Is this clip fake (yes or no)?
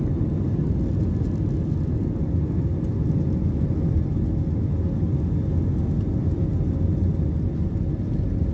no